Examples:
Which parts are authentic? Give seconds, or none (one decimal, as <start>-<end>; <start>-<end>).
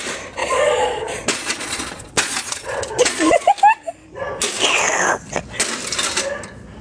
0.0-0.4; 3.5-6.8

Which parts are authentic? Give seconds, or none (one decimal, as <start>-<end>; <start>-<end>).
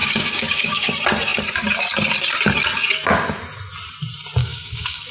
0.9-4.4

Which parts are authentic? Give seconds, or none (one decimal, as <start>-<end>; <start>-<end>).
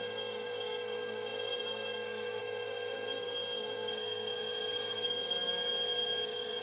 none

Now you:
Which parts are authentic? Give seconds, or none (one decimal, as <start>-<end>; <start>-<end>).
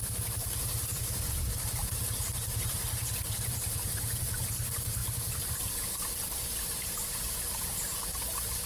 none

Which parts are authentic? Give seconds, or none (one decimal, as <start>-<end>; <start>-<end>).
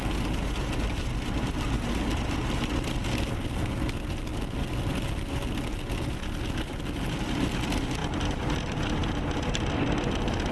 0.0-10.5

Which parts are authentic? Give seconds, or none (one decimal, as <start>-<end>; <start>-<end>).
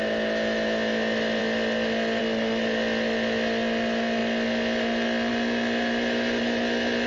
0.0-7.1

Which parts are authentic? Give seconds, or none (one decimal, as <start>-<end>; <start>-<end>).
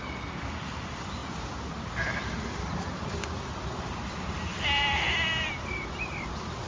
1.2-1.7